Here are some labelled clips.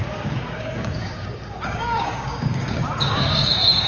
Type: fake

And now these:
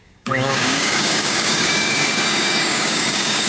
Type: fake